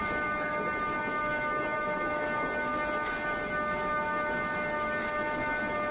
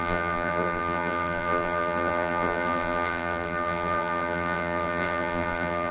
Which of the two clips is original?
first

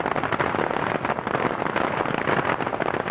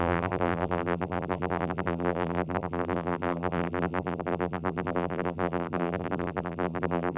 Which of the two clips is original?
first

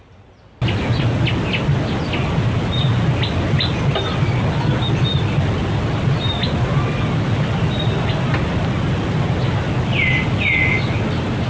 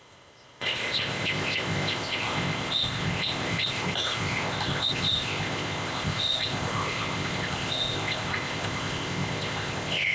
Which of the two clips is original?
first